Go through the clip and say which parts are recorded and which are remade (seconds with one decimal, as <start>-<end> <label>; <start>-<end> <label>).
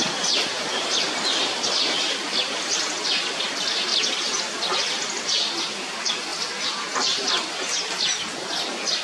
0.0-3.9 remade; 3.9-4.4 recorded; 4.4-6.3 remade; 6.3-8.0 recorded; 8.0-9.0 remade